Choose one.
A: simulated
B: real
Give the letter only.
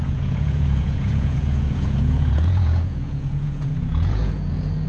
A